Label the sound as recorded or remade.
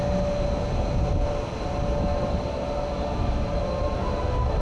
recorded